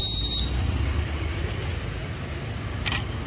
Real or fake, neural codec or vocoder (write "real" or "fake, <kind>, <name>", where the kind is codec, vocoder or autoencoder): real